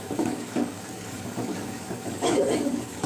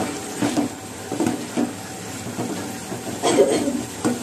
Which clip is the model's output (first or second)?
first